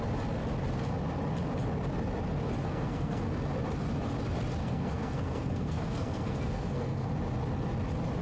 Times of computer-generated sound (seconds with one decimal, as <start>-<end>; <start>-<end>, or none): 2.6-3.2; 4.6-7.1